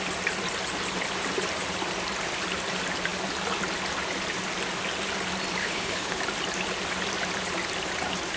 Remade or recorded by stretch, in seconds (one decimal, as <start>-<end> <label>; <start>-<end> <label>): 0.0-5.6 recorded; 5.6-6.2 remade; 6.2-8.4 recorded